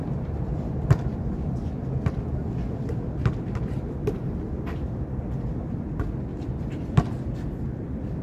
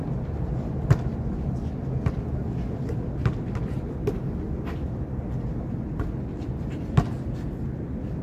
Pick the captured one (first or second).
second